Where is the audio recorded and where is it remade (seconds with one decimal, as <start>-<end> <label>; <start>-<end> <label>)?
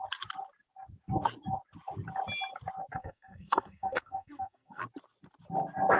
0.0-3.0 recorded; 3.0-4.8 remade; 4.8-6.0 recorded